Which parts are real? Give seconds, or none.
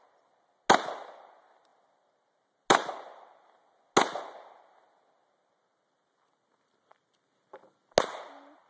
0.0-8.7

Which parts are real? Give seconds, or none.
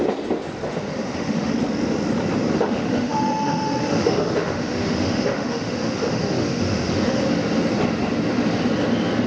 0.0-0.7; 1.5-2.5; 7.2-9.3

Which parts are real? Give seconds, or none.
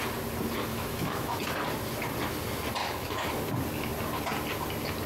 0.0-0.7; 1.4-2.8; 3.3-5.1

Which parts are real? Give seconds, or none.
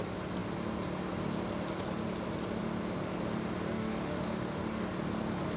0.0-3.7; 4.8-5.6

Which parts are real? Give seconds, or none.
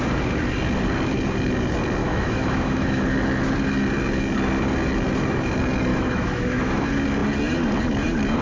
0.0-2.0; 3.0-5.9; 6.8-8.4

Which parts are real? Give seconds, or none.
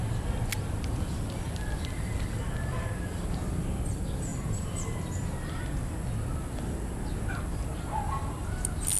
0.0-9.0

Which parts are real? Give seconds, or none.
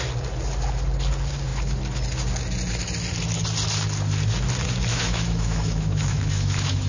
0.0-4.9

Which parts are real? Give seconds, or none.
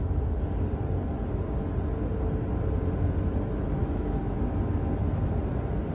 0.0-3.8; 5.4-5.9